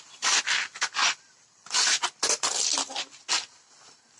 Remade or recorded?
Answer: recorded